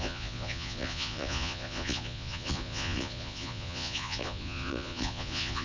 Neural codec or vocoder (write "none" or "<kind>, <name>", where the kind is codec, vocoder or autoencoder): vocoder, Vocos